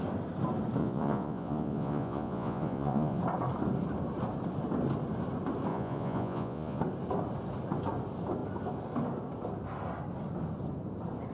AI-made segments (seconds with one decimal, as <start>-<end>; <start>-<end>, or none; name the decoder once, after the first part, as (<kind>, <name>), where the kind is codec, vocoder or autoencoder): 0.8-3.2 (vocoder, Vocos); 5.7-6.8